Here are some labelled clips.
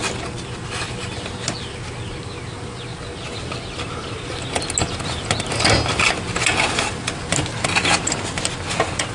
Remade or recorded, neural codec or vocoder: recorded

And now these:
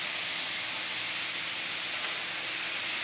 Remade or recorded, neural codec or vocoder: recorded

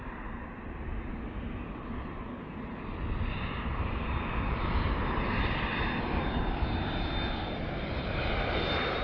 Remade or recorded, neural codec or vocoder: recorded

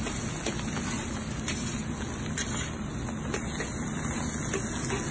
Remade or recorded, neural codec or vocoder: recorded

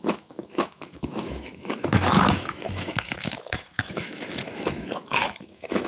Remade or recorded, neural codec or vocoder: remade, autoencoder, DAC-VAE